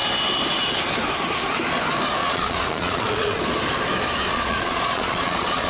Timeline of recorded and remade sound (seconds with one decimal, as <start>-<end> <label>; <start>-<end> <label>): 0.0-2.2 recorded; 2.2-3.4 remade; 3.4-4.3 recorded; 4.3-5.7 remade